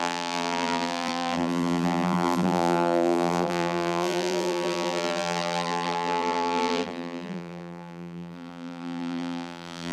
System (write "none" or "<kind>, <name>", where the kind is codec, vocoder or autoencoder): vocoder, BigVGAN v2